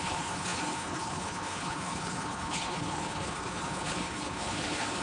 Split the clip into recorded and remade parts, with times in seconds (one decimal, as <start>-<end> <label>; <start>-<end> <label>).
0.0-5.0 remade